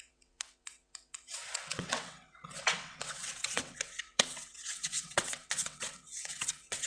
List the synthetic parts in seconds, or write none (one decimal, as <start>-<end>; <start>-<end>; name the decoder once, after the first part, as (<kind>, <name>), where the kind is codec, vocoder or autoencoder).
0.0-6.9 (vocoder, WaveNeXt)